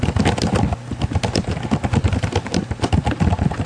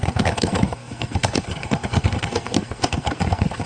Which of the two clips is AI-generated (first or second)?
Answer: second